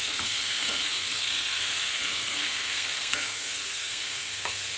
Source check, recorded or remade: remade